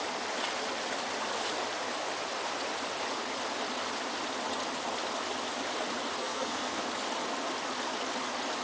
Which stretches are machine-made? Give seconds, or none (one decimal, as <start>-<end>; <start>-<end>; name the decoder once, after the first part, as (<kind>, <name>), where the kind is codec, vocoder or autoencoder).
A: 6.2-6.8 (codec, SNAC)